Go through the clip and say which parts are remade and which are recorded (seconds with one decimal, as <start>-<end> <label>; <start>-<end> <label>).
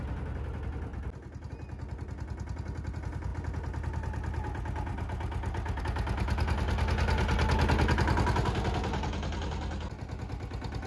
0.0-10.9 recorded